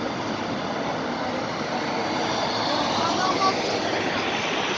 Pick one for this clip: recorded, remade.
recorded